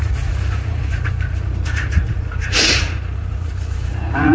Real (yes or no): no